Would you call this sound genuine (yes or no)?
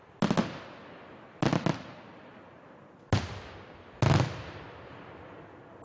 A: yes